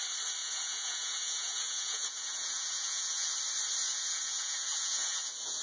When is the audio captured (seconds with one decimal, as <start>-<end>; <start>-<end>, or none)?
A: 0.0-0.4; 3.3-3.8